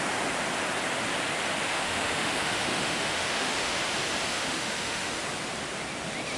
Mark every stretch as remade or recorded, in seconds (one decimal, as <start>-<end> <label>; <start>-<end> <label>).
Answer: 0.0-1.7 recorded; 1.7-3.8 remade; 3.8-4.3 recorded; 4.3-5.2 remade; 5.2-6.4 recorded